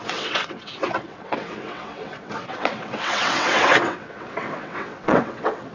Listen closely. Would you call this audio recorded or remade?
remade